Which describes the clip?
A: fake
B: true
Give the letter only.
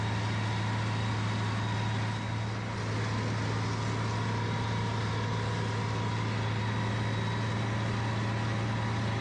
B